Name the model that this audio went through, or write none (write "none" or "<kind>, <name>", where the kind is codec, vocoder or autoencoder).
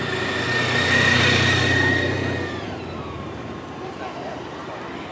none